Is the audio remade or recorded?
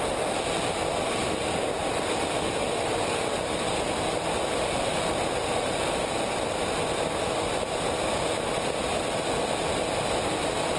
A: recorded